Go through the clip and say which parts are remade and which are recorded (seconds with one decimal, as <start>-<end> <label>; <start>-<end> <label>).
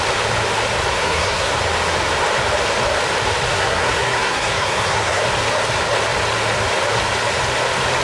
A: 0.0-0.9 recorded; 0.9-1.5 remade; 1.5-3.5 recorded; 3.5-5.2 remade; 5.2-8.0 recorded